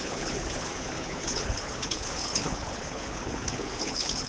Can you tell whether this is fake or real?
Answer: fake